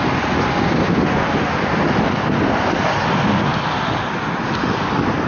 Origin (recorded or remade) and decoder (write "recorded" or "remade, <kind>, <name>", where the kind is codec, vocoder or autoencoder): recorded